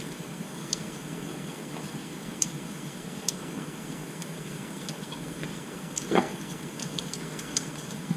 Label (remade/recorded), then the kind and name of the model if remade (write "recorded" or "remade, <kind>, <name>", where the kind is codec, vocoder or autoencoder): remade, codec, SNAC